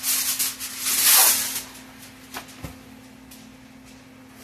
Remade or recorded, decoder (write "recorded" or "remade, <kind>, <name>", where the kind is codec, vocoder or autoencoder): recorded